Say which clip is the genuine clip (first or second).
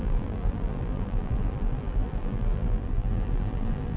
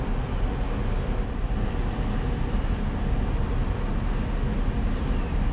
second